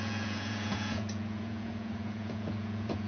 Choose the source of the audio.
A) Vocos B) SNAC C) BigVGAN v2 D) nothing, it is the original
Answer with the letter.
A